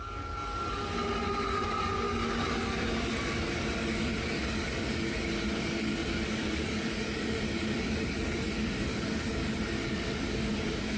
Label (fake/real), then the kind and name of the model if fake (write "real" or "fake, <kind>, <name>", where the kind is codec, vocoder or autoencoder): fake, codec, DAC